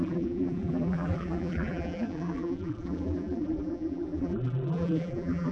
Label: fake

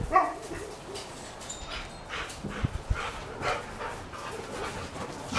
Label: real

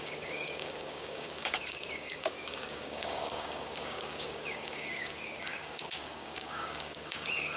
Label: fake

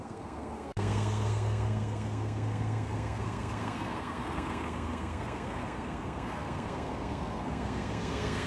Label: fake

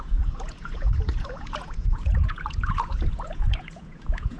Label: fake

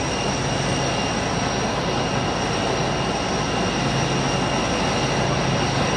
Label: real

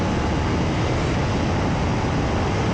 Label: real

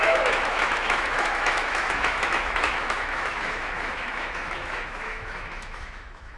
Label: fake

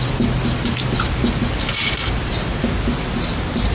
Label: real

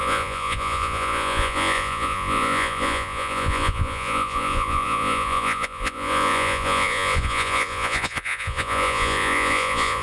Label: fake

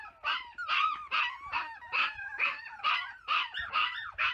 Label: fake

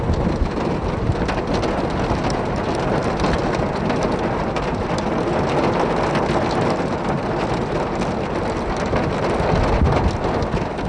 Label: real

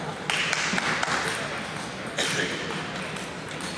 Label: real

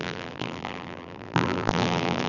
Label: fake